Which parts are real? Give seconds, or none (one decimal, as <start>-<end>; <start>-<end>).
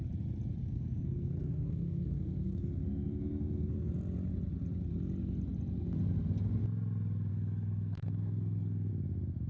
0.0-0.6; 3.9-7.3; 8.9-9.5